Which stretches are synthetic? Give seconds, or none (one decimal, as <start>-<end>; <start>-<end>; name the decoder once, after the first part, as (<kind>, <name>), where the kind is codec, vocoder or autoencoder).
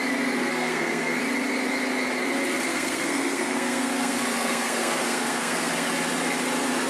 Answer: 0.5-1.2 (codec, SNAC); 2.7-5.9